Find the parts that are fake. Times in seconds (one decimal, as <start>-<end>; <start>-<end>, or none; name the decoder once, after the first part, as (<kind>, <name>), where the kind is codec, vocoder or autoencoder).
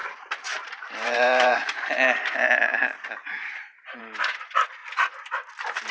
0.0-1.8 (vocoder, BigVGAN v2)